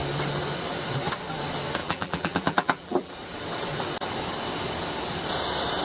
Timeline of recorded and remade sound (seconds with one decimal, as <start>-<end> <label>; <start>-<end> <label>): 0.0-1.8 recorded; 1.8-3.1 remade; 3.1-5.8 recorded